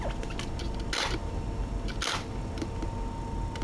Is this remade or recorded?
recorded